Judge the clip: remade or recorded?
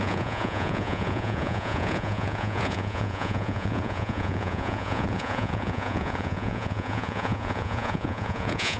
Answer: remade